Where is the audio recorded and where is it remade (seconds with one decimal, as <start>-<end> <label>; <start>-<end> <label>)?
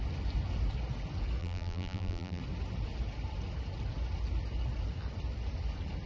0.0-1.4 recorded; 1.4-2.4 remade; 2.4-6.1 recorded